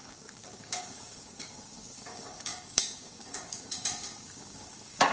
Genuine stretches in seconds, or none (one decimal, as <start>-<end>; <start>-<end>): none

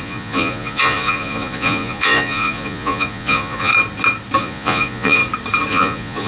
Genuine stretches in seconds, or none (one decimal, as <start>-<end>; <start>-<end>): 3.7-4.4; 5.2-5.7

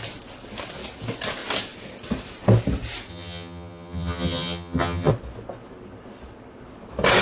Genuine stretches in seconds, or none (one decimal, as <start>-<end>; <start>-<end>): 0.0-3.1; 5.1-7.2

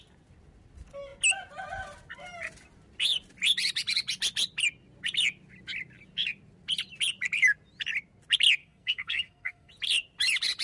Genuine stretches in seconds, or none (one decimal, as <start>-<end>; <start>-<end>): 0.0-8.6; 9.7-10.6

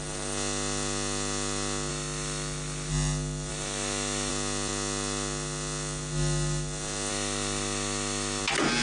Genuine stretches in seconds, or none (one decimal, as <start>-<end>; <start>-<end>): 0.0-1.9; 2.9-3.5; 4.3-7.1; 8.4-8.8